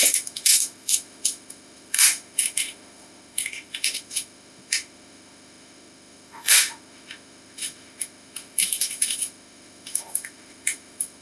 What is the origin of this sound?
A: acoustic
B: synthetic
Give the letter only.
B